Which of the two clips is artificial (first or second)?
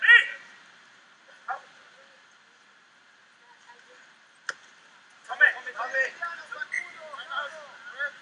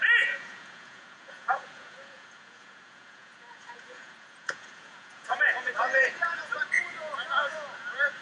second